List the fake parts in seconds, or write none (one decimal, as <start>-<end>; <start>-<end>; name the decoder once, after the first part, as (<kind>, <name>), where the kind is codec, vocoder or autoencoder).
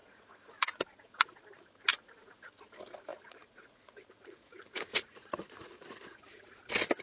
0.0-1.4 (vocoder, Vocos); 1.9-2.5; 3.1-6.6